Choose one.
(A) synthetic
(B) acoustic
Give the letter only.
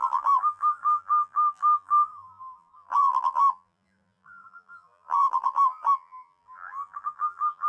A